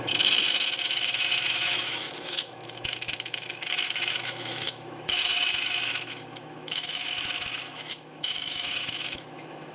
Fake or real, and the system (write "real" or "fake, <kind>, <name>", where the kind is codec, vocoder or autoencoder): fake, autoencoder, DAC-VAE